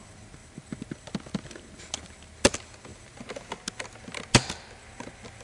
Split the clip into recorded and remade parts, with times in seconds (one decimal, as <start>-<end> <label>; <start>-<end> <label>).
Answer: 0.0-5.4 recorded